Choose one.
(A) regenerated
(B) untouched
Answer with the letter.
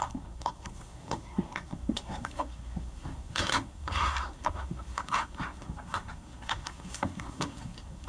A